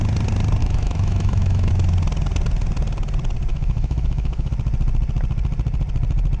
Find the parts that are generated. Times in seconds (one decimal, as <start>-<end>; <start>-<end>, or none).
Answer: 0.6-1.7; 3.5-4.5